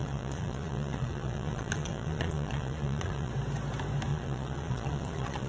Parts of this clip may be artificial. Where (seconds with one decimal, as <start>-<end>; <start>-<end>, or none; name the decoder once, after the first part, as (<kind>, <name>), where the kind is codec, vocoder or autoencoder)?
0.0-3.3 (vocoder, Vocos); 4.1-5.5